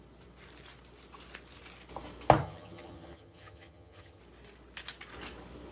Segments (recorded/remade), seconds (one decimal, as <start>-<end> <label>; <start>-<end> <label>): 0.0-2.4 recorded; 2.4-4.2 remade; 4.2-5.7 recorded